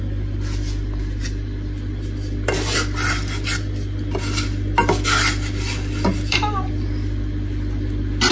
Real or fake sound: real